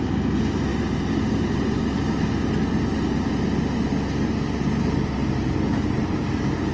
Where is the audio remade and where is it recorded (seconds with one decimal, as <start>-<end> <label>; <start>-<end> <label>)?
0.0-5.2 recorded; 5.2-5.9 remade; 5.9-6.7 recorded